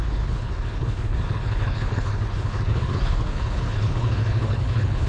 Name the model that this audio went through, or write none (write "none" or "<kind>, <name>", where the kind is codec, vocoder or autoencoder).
codec, HILCodec